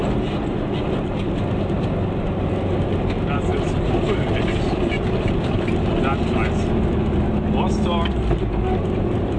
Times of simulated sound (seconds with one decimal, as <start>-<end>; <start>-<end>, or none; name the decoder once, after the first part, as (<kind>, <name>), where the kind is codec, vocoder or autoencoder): none